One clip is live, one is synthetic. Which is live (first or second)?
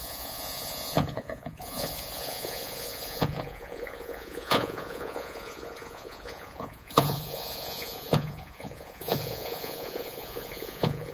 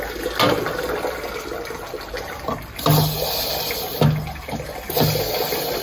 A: second